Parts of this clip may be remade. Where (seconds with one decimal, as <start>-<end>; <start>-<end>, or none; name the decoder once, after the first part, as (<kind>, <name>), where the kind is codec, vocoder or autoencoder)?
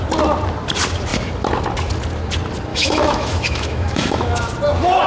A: 2.7-4.4 (autoencoder, DAC-VAE)